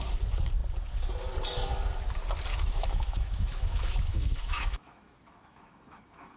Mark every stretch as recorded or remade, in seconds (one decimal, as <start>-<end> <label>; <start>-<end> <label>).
0.0-2.5 recorded; 2.5-6.4 remade